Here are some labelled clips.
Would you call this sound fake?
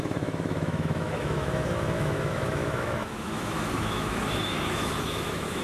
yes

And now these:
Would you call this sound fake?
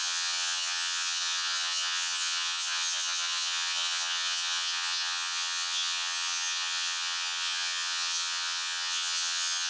yes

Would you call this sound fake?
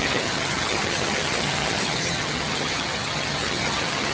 yes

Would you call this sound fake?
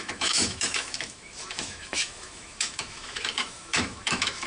yes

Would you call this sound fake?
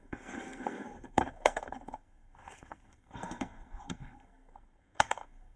yes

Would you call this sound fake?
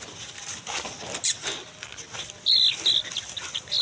no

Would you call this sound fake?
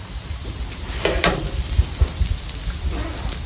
no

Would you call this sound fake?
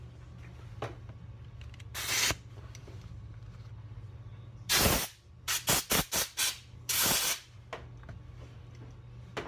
no